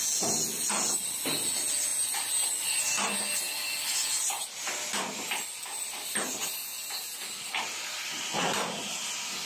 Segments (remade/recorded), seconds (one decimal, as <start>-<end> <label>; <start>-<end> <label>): 0.0-9.5 recorded